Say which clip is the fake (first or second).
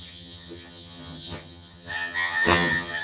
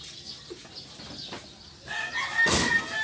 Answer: first